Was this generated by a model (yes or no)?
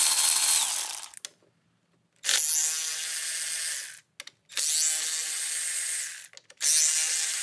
no